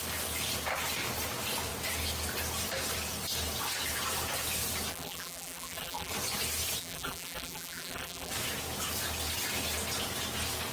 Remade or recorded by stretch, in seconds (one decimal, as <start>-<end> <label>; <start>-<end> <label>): 0.0-4.9 recorded; 4.9-6.1 remade; 6.1-6.8 recorded; 6.8-8.3 remade; 8.3-10.7 recorded